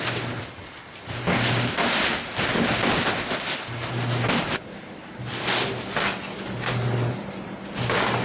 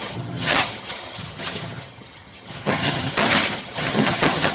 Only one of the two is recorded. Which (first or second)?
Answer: first